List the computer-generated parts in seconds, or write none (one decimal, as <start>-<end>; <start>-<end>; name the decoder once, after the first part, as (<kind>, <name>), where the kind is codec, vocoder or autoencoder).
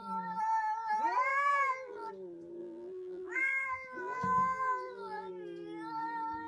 1.3-2.1 (vocoder, BigVGAN v2); 2.6-5.3